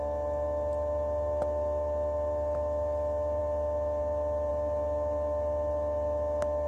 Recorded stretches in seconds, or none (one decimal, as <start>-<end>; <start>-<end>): 0.0-6.7